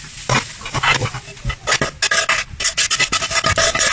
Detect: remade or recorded recorded